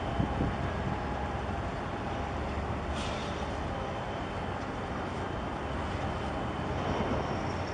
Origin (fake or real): real